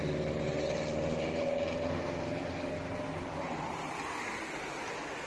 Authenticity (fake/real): real